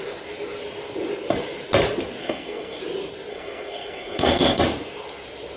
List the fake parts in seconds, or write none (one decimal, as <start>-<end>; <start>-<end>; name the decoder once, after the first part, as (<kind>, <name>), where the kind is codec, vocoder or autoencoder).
2.2-2.8 (codec, SNAC); 3.3-4.6